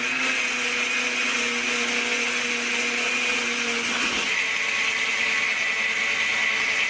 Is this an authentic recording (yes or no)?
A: yes